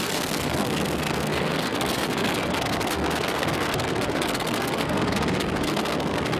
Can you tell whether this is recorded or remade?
remade